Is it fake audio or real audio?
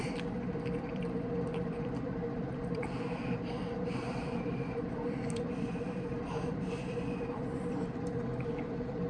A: fake